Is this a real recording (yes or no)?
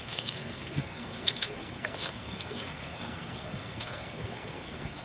no